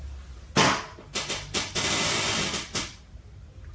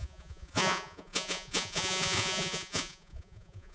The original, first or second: first